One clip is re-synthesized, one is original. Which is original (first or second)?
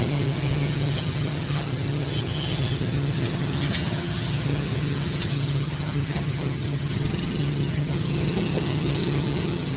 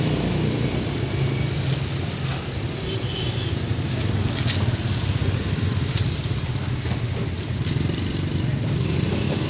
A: second